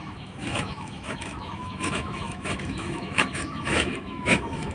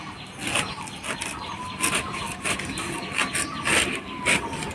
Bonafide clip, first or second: second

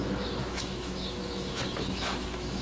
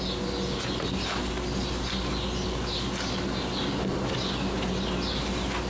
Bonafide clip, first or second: second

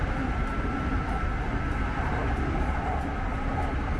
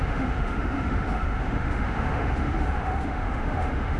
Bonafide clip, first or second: first